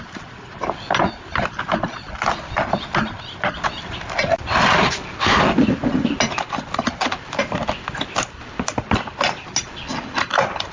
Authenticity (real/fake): real